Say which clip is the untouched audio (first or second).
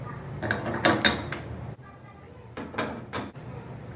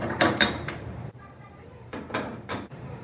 first